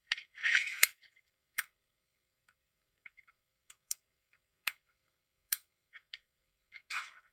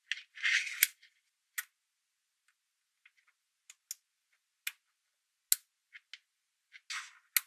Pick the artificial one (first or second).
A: first